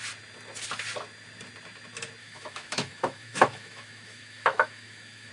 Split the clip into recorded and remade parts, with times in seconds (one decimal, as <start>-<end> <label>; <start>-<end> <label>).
0.0-2.2 recorded; 2.2-5.3 remade